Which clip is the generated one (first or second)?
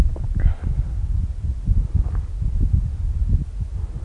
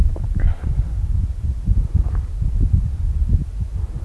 second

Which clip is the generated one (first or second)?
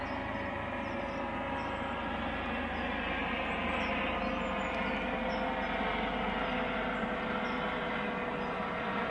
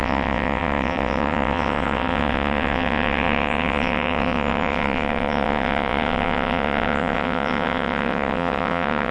second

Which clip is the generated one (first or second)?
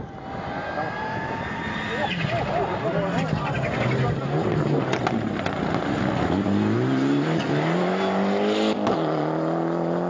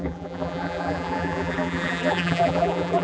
second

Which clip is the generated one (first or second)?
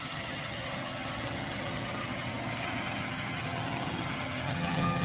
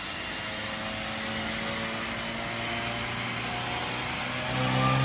first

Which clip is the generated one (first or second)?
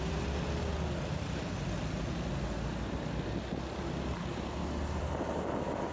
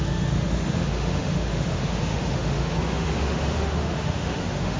second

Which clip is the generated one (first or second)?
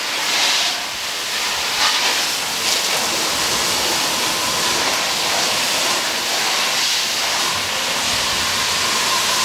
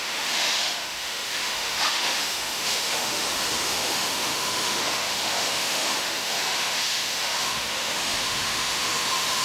second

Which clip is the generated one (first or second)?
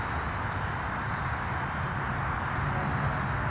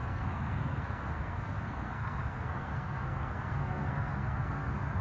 second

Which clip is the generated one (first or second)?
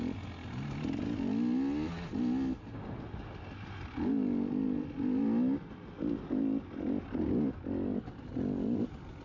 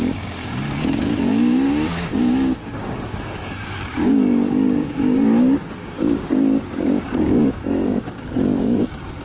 second